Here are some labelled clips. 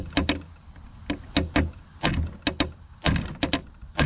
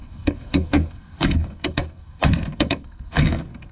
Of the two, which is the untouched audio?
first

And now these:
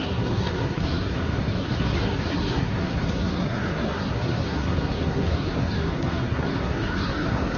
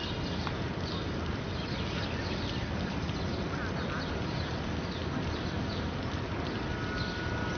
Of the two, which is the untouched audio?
second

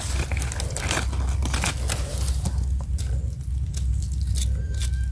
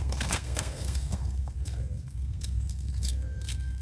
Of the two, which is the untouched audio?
first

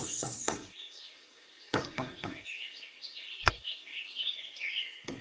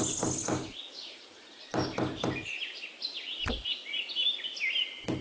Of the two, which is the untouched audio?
second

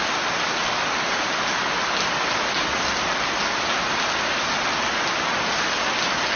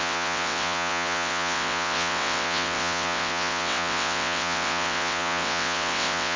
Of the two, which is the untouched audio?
first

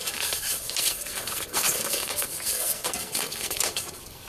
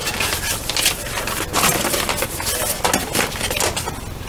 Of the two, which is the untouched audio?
second